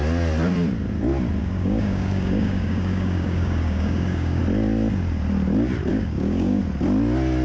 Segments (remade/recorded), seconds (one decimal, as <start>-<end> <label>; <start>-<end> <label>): 0.0-1.4 recorded; 1.4-4.4 remade; 4.4-5.9 recorded; 5.9-6.6 remade; 6.6-7.4 recorded